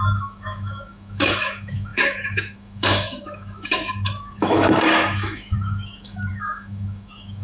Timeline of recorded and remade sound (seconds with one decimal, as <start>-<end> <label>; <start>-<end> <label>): 0.0-7.4 remade